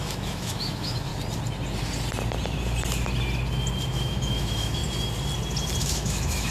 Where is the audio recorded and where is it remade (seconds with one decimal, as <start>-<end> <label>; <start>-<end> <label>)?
0.0-1.1 remade; 1.1-3.9 recorded; 3.9-4.8 remade; 4.8-5.8 recorded; 5.8-6.5 remade